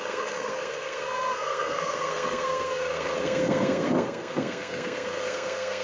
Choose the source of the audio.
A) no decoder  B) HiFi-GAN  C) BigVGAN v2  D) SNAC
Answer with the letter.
D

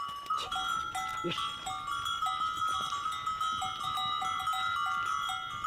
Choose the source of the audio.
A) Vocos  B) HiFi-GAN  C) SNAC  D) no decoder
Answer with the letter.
D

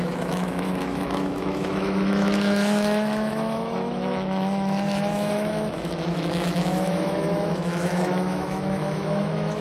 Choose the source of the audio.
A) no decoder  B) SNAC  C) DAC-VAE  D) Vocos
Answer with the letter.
C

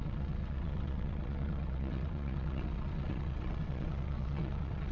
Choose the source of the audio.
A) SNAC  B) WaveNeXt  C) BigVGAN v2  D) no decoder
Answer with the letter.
B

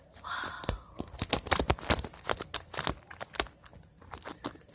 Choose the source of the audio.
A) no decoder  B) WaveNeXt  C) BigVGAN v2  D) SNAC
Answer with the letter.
A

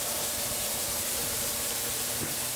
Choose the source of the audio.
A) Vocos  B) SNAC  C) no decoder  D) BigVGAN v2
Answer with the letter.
D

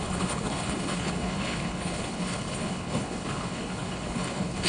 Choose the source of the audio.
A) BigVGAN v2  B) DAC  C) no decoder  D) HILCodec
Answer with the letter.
D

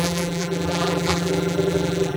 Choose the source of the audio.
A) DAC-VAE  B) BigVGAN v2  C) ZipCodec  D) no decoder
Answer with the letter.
B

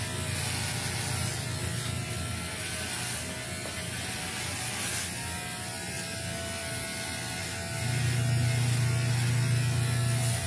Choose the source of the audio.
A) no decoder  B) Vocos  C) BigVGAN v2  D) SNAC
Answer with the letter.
A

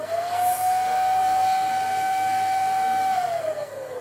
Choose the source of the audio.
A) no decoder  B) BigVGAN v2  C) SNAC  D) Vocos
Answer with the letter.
C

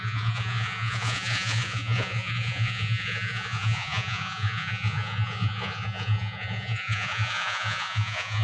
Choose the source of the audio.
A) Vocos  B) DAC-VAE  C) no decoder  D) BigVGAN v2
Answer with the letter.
A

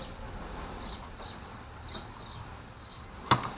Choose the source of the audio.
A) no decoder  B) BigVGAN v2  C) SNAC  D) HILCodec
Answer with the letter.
A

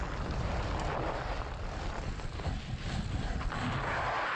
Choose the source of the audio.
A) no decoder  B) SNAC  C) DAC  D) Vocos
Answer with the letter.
A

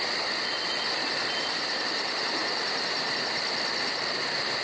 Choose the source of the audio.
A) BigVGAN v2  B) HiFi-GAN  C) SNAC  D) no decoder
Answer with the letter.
D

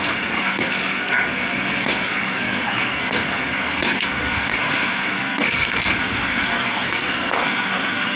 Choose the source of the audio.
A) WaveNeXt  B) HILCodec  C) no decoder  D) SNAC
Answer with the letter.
D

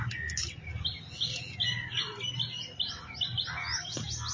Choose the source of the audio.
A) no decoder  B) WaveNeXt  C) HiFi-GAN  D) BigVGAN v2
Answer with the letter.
A